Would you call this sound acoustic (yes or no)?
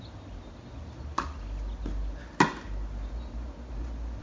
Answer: yes